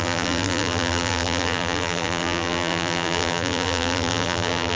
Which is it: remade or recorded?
remade